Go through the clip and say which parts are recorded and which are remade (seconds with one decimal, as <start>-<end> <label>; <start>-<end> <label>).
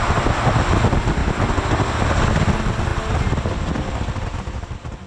0.0-5.1 recorded